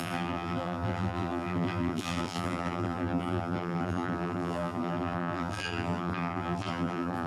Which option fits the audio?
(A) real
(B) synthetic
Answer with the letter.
B